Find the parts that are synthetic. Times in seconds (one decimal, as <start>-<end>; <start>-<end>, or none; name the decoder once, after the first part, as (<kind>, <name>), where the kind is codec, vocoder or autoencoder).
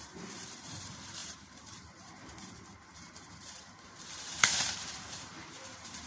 0.0-6.1 (vocoder, BigVGAN v2)